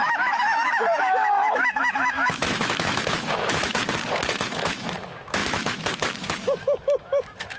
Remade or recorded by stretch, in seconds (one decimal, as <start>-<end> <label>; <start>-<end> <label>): 0.0-3.8 remade; 3.8-4.3 recorded; 4.3-7.6 remade